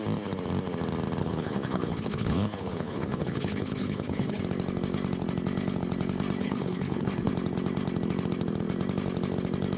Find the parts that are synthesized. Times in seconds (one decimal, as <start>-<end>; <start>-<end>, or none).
1.2-4.4; 6.4-7.3

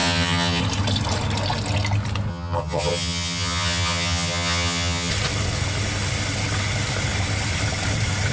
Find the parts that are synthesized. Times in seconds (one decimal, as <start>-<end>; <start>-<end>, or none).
0.0-0.6; 2.3-5.1

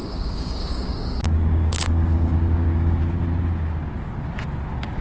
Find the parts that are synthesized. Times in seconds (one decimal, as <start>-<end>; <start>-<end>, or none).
0.0-3.0

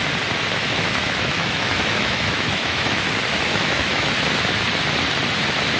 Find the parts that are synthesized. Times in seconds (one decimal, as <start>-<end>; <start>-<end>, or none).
0.6-3.0; 3.5-4.1

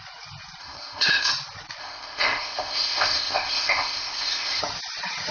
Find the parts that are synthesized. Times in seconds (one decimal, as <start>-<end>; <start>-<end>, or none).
0.6-1.3; 1.8-4.6

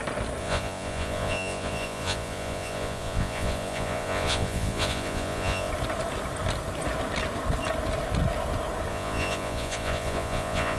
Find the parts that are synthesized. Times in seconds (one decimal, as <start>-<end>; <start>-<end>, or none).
0.4-5.7; 8.9-10.8

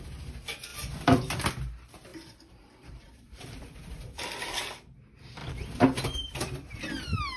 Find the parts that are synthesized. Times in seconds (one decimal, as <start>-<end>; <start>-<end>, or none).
0.7-1.5; 2.1-4.2; 5.4-6.8